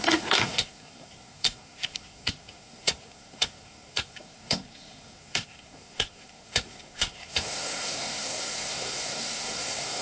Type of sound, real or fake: fake